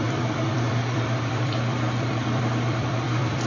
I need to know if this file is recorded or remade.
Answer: remade